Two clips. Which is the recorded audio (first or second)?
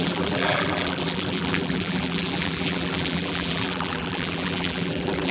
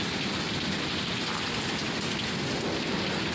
second